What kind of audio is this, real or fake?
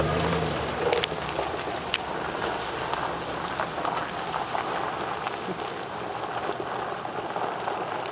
real